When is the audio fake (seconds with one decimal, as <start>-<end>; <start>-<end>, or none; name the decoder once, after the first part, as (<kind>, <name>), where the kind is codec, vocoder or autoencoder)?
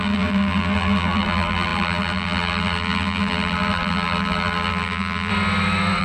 0.0-5.3 (vocoder, BigVGAN v2)